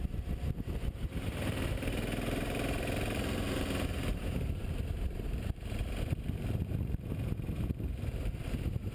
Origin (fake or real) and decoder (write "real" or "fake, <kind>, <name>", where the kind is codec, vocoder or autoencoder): fake, vocoder, BigVGAN v2